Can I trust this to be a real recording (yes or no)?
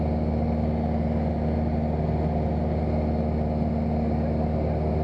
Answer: yes